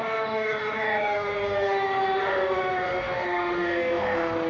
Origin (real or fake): fake